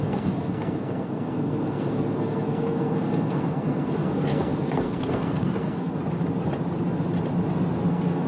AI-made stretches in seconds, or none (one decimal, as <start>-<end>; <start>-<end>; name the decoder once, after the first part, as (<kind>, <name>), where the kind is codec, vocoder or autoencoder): 0.0-5.9 (codec, SNAC); 7.9-8.3